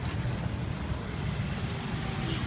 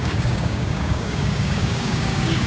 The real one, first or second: first